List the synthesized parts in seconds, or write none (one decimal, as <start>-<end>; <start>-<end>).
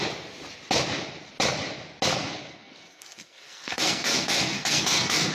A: 2.1-5.3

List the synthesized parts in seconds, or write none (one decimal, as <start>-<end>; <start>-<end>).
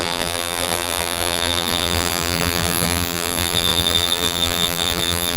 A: 0.0-5.4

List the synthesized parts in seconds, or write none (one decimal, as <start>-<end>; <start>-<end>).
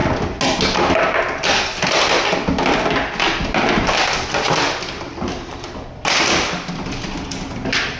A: none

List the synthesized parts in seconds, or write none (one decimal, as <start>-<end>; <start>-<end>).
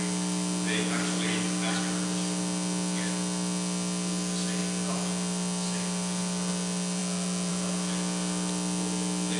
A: none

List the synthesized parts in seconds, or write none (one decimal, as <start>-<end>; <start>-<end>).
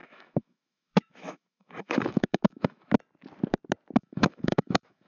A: 0.0-2.9; 4.0-5.1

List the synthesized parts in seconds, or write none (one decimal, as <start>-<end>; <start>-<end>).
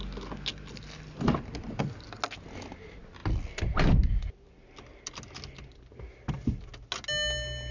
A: none